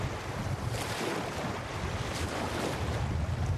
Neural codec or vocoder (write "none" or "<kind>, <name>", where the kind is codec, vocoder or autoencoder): none